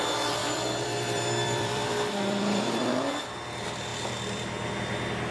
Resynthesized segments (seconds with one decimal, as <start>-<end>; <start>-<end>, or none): 0.4-3.2